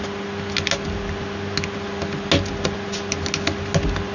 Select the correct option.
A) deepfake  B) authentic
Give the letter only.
B